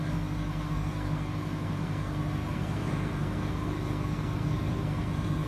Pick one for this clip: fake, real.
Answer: fake